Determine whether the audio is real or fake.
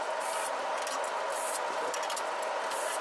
real